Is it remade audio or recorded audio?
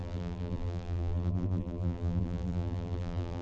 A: remade